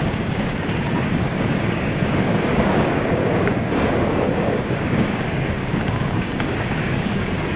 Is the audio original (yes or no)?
no